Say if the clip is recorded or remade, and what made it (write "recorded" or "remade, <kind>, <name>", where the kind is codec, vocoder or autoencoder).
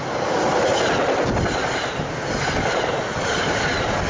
recorded